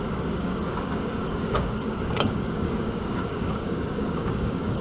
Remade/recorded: remade